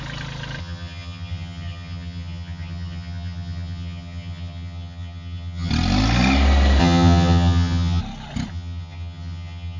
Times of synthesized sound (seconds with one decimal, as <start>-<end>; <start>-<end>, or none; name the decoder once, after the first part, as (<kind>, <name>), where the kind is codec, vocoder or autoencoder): 0.6-5.7 (vocoder, HiFi-GAN); 6.8-8.0; 8.5-9.8